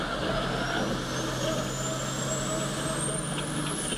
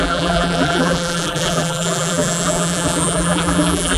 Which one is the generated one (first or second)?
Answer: second